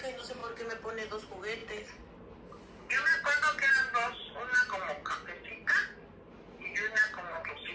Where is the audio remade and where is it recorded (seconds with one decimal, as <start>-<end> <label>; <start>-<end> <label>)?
0.0-7.7 recorded